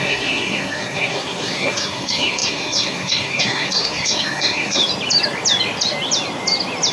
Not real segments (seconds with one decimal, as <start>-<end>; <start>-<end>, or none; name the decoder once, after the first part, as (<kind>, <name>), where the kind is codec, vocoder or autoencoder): 0.0-4.8 (codec, SNAC)